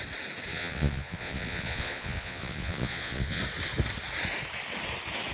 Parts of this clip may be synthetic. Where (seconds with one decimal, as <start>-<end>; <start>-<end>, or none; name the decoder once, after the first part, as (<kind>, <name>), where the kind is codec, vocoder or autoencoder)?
0.5-3.4 (vocoder, Vocos)